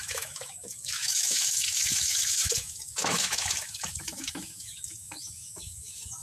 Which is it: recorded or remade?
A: remade